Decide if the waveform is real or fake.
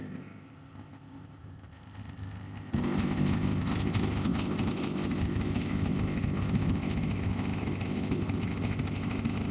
fake